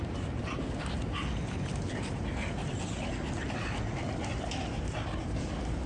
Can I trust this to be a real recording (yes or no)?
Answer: yes